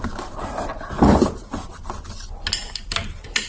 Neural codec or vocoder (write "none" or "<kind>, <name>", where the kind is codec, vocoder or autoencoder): none